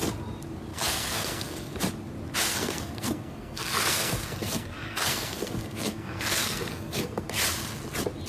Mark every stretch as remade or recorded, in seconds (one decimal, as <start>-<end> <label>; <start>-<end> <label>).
0.0-0.7 recorded; 0.7-1.8 remade; 1.8-2.5 recorded; 2.5-7.4 remade; 7.4-8.3 recorded